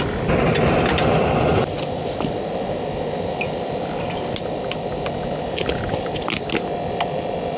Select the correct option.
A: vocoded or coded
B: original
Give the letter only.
B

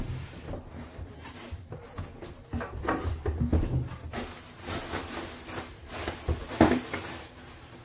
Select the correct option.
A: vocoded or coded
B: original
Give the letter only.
A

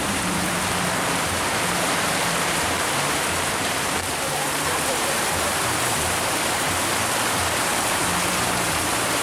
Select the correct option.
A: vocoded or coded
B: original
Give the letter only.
A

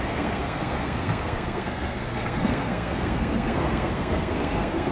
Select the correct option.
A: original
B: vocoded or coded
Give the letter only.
B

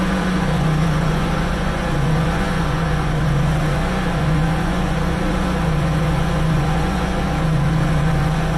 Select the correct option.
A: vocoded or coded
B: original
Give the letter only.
A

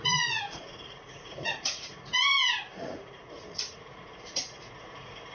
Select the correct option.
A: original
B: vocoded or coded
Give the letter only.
B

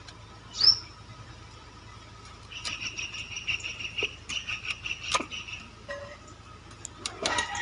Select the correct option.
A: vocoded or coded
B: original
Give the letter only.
B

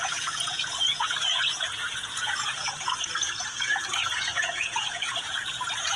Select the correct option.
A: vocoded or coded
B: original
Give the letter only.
A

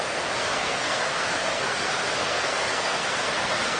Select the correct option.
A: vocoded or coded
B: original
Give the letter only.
A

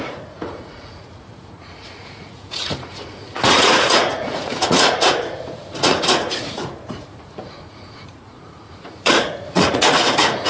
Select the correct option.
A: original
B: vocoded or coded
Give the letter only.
B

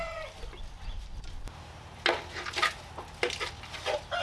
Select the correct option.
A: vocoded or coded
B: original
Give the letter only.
B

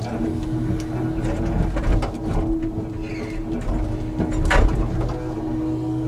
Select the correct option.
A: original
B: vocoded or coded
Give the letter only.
A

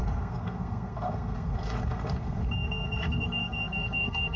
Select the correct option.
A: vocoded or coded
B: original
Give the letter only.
A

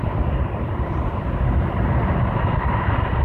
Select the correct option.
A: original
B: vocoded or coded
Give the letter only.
A